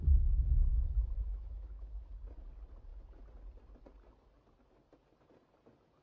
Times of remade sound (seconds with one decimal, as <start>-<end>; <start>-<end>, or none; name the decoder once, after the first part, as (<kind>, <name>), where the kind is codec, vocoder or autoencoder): 0.7-2.1 (autoencoder, DAC-VAE)

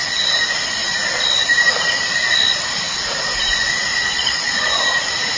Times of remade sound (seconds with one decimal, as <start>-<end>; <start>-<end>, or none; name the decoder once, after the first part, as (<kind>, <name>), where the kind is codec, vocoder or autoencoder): 3.9-4.8 (vocoder, Vocos)

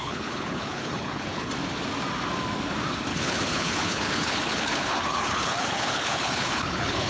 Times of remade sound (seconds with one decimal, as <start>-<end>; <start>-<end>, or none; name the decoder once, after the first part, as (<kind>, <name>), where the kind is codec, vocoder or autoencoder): 0.0-1.5 (codec, HILCodec); 3.1-7.1

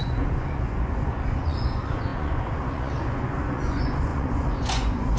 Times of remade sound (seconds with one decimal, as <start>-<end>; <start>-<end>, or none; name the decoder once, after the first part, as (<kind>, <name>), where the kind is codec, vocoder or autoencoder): 0.0-5.2 (vocoder, Vocos)

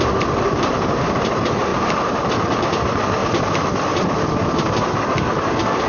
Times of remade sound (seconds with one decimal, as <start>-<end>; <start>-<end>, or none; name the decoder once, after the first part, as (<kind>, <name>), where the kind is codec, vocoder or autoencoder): 0.0-3.2 (vocoder, BigVGAN v2); 4.7-5.9

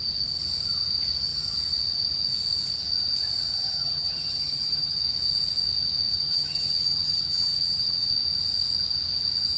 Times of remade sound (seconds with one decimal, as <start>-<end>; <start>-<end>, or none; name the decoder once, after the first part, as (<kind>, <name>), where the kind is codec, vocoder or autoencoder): 3.5-5.0 (vocoder, HiFi-GAN); 6.1-8.1

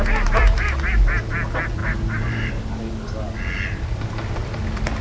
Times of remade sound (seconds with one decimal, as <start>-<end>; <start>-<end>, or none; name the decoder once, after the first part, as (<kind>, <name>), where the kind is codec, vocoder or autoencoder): 1.8-2.5 (vocoder, BigVGAN v2)